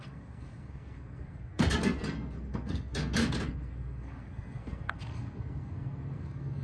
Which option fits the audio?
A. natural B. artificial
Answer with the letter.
B